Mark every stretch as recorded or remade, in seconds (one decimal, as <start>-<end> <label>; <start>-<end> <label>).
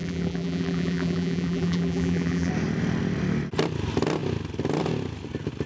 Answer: 0.0-2.5 remade; 2.5-5.7 recorded